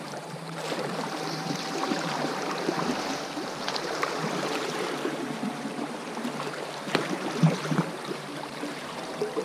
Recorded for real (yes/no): no